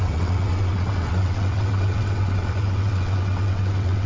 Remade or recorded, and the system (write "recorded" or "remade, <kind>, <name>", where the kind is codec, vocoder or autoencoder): remade, vocoder, WaveNeXt